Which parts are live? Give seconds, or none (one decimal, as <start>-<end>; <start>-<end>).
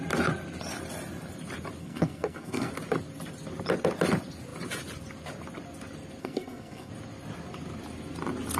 0.0-1.8; 2.7-6.2; 6.9-8.6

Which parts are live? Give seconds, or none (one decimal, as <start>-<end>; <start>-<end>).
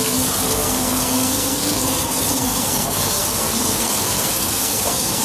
none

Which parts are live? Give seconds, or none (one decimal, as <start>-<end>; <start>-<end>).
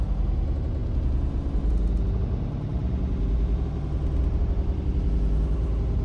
0.0-6.0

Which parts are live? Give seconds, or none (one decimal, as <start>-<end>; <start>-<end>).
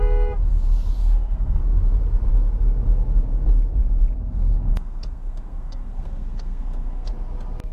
0.0-1.0; 1.6-4.7; 7.1-7.7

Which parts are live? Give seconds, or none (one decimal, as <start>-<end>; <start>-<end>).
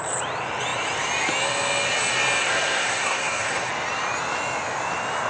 0.0-2.4; 3.7-5.3